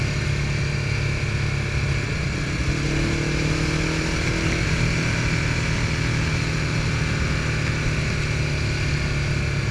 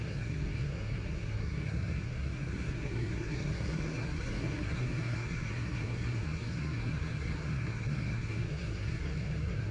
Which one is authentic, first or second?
first